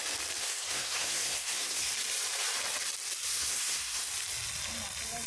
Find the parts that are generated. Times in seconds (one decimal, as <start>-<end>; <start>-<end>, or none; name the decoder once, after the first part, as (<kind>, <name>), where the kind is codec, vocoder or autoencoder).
0.4-1.9 (codec, SNAC); 3.3-4.1

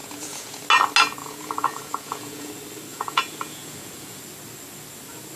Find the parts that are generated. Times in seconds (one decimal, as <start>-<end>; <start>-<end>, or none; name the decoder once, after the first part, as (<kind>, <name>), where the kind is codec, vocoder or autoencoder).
0.0-0.6 (vocoder, Vocos); 1.2-2.5; 2.9-4.2

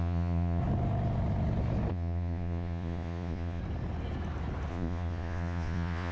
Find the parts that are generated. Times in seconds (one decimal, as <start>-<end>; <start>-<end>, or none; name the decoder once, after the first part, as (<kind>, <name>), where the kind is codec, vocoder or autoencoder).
0.0-0.6 (vocoder, Vocos); 1.9-3.6; 4.7-6.1

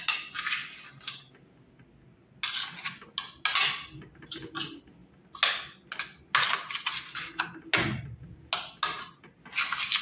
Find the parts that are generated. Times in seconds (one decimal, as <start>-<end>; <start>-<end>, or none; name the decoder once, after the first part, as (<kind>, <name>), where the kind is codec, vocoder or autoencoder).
none

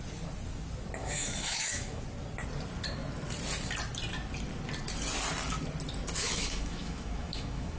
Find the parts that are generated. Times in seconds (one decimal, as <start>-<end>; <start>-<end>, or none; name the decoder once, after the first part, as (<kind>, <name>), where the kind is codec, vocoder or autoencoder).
1.0-2.0 (autoencoder, DAC-VAE); 6.2-7.8

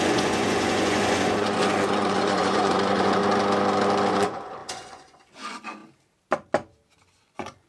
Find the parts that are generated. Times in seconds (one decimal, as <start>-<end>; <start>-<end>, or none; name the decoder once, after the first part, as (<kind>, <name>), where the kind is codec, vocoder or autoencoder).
0.0-3.2 (vocoder, Vocos); 4.1-5.8; 7.1-7.7

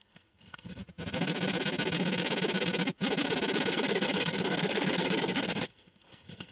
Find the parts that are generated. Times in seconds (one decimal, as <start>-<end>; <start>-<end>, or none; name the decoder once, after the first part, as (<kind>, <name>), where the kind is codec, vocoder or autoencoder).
0.0-0.8 (codec, SNAC); 3.7-6.5